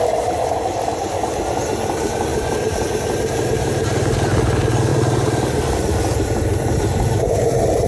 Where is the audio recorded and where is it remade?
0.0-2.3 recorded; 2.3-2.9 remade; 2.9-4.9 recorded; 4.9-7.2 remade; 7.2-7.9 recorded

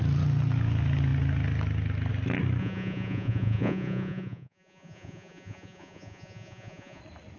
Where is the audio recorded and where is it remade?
0.0-2.6 recorded; 2.6-7.0 remade; 7.0-7.4 recorded

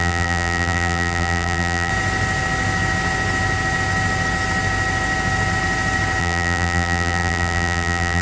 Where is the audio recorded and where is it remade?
0.0-1.9 remade; 1.9-6.2 recorded; 6.2-8.2 remade

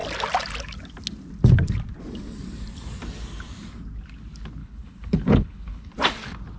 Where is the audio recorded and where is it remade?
0.0-4.6 recorded; 4.6-5.9 remade; 5.9-6.6 recorded

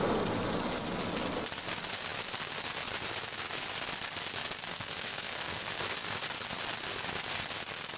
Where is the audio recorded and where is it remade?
0.0-4.7 recorded; 4.7-5.7 remade; 5.7-8.0 recorded

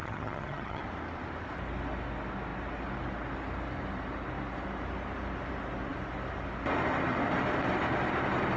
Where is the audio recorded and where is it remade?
0.0-0.8 remade; 0.8-8.6 recorded

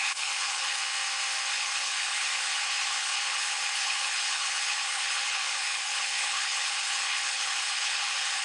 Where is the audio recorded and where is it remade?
0.0-0.8 remade; 0.8-1.5 recorded; 1.5-8.4 remade